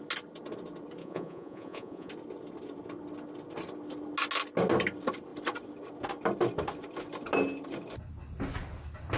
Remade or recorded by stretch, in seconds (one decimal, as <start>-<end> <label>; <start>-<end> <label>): 0.0-1.0 recorded; 1.0-2.1 remade; 2.1-9.2 recorded